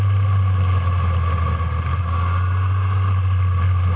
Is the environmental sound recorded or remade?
recorded